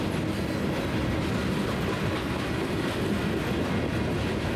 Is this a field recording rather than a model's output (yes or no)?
yes